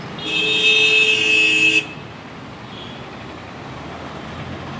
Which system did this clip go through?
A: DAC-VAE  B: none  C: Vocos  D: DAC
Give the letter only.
B